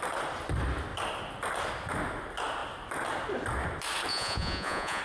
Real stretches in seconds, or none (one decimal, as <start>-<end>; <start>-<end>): 0.0-4.1